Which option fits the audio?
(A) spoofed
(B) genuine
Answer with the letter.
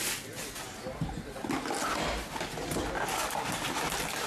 B